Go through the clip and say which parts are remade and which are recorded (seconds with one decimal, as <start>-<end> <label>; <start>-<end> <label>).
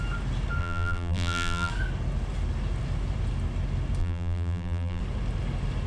0.0-0.6 recorded; 0.6-1.7 remade; 1.7-4.0 recorded; 4.0-5.0 remade; 5.0-5.9 recorded